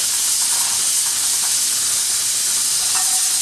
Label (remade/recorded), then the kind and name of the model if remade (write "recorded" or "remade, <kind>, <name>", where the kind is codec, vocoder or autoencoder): recorded